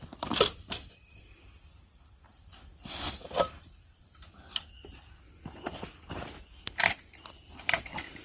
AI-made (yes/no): yes